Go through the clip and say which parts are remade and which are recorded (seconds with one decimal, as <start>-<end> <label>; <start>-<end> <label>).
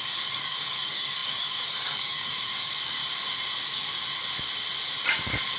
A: 0.0-3.0 remade; 3.0-3.6 recorded; 3.6-4.0 remade; 4.0-5.6 recorded